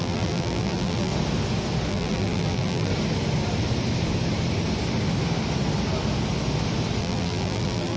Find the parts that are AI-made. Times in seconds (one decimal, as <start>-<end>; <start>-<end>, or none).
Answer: 0.0-1.1; 1.9-2.9; 7.0-8.0